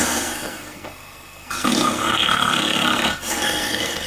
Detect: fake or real fake